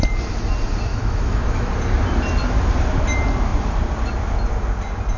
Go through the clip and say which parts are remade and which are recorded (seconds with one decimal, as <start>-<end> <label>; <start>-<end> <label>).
0.0-0.9 recorded; 0.9-1.7 remade; 1.7-5.2 recorded